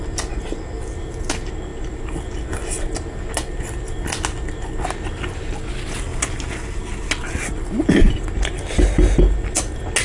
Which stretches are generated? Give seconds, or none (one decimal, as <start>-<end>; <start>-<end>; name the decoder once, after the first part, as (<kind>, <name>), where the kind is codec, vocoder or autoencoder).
none